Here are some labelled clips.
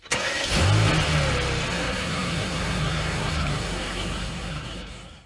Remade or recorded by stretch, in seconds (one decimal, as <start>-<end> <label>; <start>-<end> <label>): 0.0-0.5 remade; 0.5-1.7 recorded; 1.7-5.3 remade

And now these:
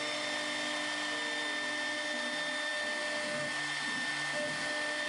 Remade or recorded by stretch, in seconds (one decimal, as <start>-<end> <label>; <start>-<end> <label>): 0.0-5.1 recorded

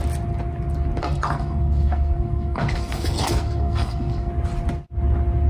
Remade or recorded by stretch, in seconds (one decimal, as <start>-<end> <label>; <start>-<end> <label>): 0.0-1.0 recorded; 1.0-4.3 remade; 4.3-5.5 recorded